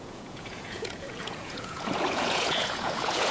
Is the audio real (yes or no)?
no